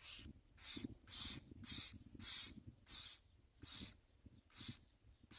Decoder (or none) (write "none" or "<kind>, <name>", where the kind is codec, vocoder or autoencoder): none